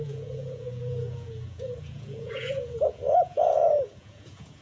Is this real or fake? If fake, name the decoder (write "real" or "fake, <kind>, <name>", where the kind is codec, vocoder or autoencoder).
fake, vocoder, Vocos